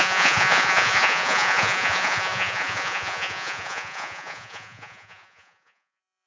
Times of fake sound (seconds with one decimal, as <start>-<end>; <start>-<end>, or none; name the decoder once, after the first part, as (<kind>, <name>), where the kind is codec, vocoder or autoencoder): 0.0-6.3 (vocoder, Vocos)